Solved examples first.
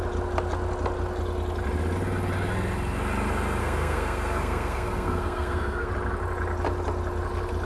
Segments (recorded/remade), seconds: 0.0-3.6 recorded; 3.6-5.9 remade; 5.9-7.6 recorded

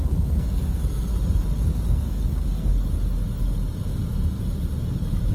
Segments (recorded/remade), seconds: 0.0-1.1 remade; 1.1-1.9 recorded; 1.9-2.7 remade; 2.7-5.3 recorded

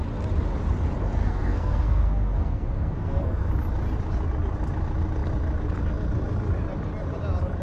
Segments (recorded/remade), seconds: 0.0-1.2 recorded; 1.2-3.5 remade; 3.5-7.6 recorded

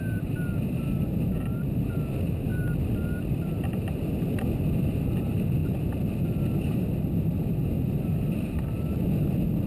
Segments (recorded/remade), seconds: 0.0-9.7 recorded

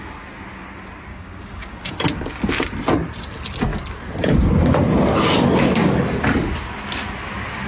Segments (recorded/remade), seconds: 0.0-1.1 recorded; 1.1-1.9 remade; 1.9-7.7 recorded

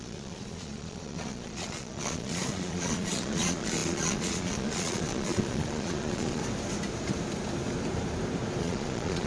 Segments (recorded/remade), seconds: 0.0-6.4 remade; 6.4-8.6 recorded; 8.6-9.3 remade